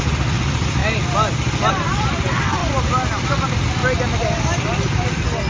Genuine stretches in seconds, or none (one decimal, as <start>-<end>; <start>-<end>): 0.0-5.5